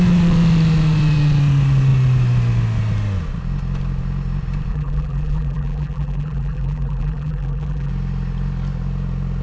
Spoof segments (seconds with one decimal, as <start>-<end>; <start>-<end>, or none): 4.7-7.9